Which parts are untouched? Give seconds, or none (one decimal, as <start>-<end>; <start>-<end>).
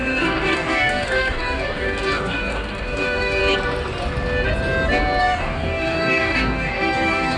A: 3.4-5.2